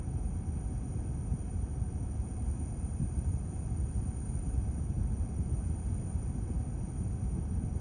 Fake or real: real